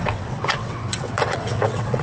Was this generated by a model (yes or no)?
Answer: yes